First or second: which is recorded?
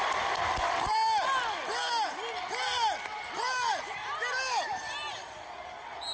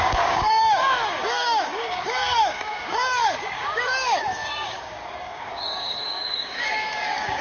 first